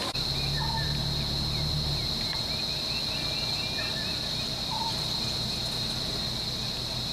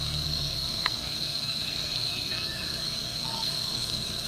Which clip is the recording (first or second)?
first